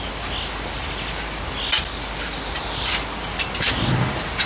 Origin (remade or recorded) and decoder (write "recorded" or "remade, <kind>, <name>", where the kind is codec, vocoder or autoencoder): recorded